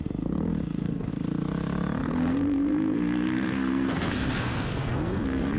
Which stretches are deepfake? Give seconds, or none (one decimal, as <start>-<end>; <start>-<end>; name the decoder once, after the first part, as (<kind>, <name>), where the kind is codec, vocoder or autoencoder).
0.0-1.1 (codec, SNAC); 2.0-5.6